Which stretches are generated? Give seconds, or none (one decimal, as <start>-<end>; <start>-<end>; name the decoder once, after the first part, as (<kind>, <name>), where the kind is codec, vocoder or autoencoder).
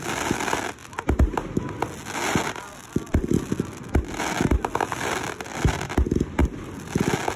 none